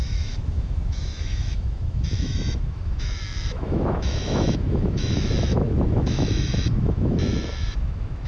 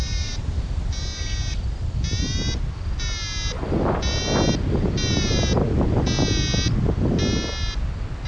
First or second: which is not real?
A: first